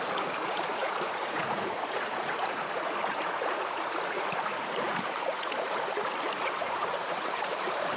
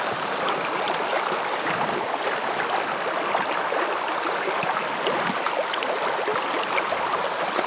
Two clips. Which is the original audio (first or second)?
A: second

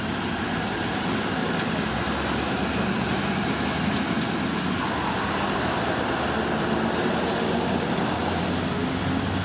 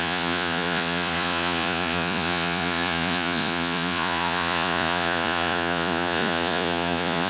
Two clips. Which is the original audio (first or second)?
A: first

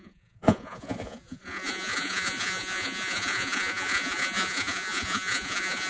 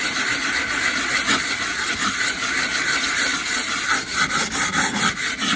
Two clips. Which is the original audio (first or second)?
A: second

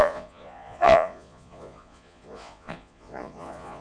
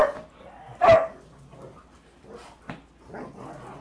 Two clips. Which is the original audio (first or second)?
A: second